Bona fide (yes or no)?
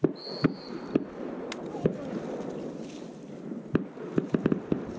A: yes